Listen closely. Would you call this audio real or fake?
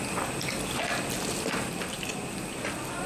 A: real